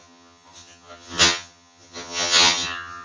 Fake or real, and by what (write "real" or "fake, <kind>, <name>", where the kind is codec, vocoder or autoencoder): fake, vocoder, HiFi-GAN